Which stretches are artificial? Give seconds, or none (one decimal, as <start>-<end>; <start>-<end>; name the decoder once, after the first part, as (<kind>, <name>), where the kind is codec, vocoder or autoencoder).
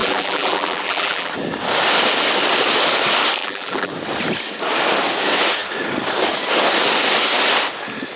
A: 0.0-1.3 (vocoder, BigVGAN v2); 3.4-3.9